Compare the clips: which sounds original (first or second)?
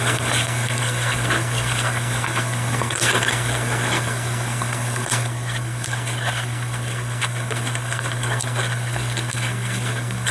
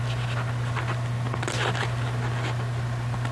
second